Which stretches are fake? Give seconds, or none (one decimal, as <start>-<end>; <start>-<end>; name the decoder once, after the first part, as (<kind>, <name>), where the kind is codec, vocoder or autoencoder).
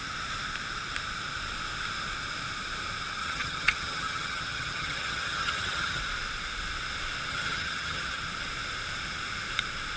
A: 3.2-6.0 (vocoder, HiFi-GAN); 7.3-8.2